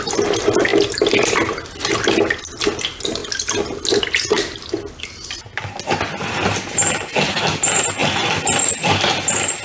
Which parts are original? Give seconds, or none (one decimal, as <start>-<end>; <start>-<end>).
0.0-9.6